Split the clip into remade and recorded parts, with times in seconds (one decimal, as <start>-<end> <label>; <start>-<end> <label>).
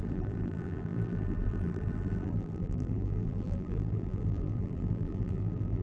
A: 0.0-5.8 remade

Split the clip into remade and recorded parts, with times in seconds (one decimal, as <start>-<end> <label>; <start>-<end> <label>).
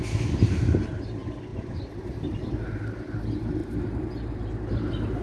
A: 0.0-1.5 recorded; 1.5-2.0 remade; 2.0-3.6 recorded; 3.6-4.5 remade; 4.5-5.2 recorded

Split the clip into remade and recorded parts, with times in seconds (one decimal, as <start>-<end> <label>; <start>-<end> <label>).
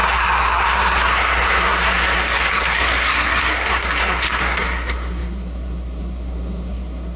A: 0.0-7.2 remade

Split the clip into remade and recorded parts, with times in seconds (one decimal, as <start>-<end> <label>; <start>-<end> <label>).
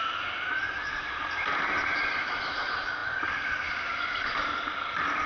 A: 0.0-5.3 recorded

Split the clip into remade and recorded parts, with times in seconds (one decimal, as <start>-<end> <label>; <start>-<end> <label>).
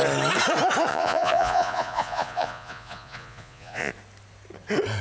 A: 0.0-0.9 recorded; 0.9-3.9 remade; 3.9-5.0 recorded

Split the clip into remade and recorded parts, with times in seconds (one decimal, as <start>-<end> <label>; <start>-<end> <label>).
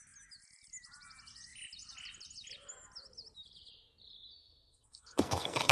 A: 0.0-4.4 recorded; 4.4-5.7 remade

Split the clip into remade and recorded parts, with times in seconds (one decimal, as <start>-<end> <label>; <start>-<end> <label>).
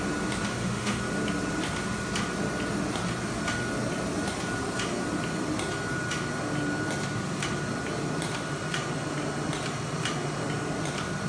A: 0.0-0.5 recorded; 0.5-1.0 remade; 1.0-11.3 recorded